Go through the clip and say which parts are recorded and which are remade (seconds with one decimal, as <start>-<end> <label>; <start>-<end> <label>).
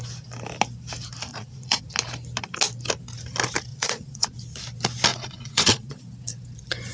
0.0-1.3 recorded; 1.3-1.8 remade; 1.8-3.7 recorded; 3.7-4.4 remade; 4.4-5.1 recorded; 5.1-6.0 remade; 6.0-6.9 recorded